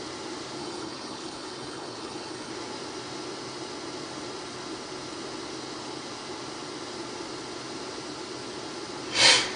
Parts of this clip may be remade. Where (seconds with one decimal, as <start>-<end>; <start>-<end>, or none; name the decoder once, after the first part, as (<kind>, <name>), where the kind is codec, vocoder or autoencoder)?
0.6-2.5 (codec, HILCodec)